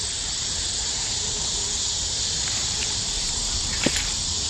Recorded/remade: remade